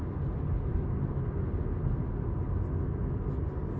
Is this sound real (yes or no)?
yes